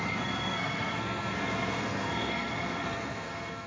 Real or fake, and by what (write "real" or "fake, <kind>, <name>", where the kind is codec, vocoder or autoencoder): fake, codec, SNAC